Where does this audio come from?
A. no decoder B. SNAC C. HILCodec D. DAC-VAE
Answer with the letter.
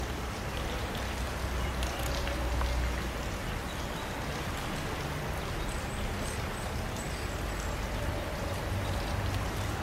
A